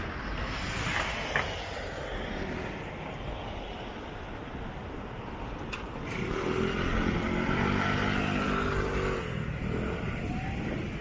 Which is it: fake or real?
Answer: real